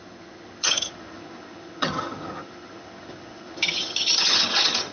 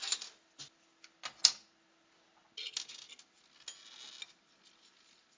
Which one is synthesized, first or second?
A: first